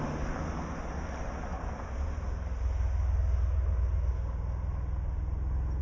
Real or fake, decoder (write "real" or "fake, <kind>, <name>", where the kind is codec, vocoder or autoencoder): real